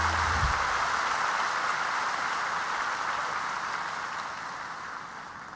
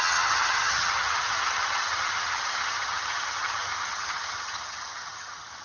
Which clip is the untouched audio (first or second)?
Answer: first